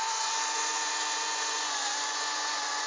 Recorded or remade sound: remade